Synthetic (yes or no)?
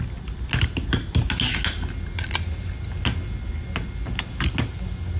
no